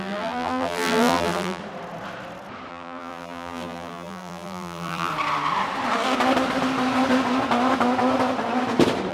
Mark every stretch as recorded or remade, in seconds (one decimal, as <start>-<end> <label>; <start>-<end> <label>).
0.0-1.6 remade; 1.6-2.7 recorded; 2.7-5.1 remade; 5.1-9.1 recorded